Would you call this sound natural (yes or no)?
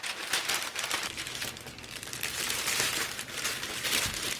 no